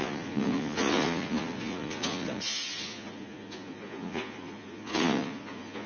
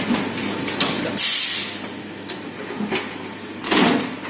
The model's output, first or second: first